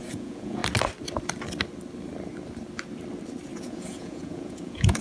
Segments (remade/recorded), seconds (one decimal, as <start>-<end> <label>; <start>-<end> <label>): 0.0-0.6 remade; 0.6-3.6 recorded; 3.6-5.0 remade